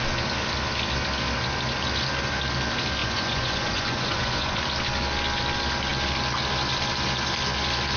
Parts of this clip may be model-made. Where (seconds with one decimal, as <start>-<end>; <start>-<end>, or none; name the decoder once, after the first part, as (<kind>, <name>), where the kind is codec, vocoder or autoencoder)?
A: 3.0-4.6 (vocoder, Vocos)